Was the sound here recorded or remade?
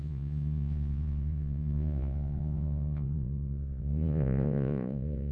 remade